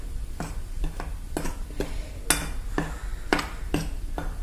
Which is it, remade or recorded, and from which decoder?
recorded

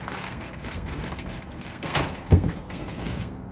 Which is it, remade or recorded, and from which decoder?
remade, codec, SNAC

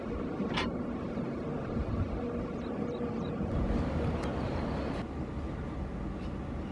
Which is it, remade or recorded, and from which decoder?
recorded